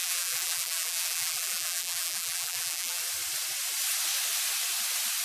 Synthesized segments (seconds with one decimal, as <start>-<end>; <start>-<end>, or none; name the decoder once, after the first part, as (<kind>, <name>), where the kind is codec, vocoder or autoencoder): 0.0-3.0 (vocoder, BigVGAN v2)